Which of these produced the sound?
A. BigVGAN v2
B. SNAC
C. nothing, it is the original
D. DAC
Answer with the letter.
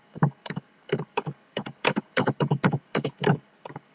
D